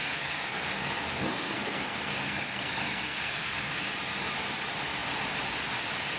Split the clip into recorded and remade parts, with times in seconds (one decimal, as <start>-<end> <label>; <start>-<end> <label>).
0.0-3.7 remade; 3.7-6.2 recorded